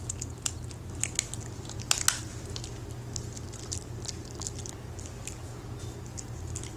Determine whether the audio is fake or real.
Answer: real